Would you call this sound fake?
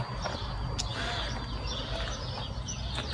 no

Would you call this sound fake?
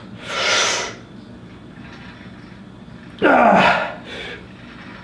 no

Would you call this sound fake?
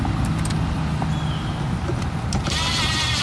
no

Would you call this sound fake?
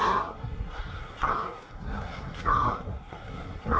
yes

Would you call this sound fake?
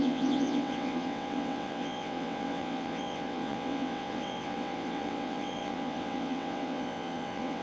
yes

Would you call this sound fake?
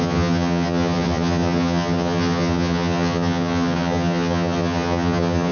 yes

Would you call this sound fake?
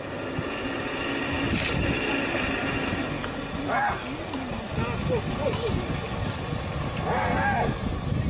no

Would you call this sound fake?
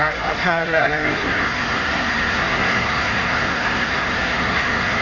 yes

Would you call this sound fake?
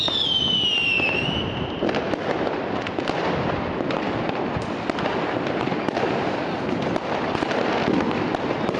no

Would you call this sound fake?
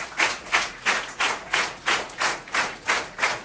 yes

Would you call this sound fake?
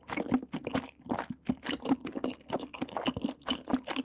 no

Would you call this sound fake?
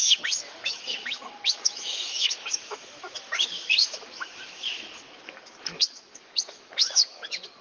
yes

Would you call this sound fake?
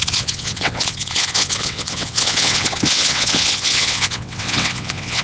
yes